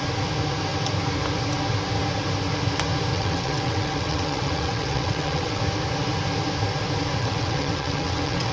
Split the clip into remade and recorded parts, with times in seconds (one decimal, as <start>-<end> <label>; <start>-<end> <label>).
0.0-3.1 recorded; 3.1-5.6 remade; 5.6-7.2 recorded; 7.2-8.5 remade